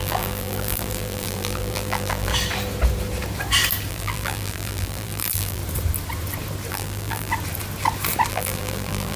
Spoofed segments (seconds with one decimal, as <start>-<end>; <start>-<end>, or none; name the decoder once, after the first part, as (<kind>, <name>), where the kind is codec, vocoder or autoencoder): 0.0-2.3 (vocoder, BigVGAN v2); 3.9-5.6; 6.7-7.3; 8.3-9.2